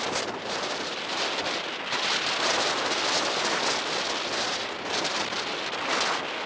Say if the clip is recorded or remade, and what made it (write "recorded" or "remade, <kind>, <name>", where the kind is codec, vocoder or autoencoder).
recorded